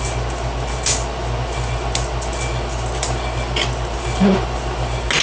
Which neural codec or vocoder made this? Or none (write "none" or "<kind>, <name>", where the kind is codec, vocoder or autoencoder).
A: none